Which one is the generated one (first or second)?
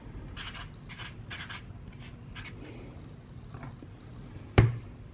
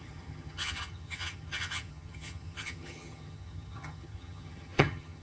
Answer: second